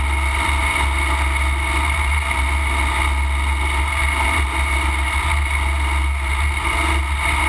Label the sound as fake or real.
real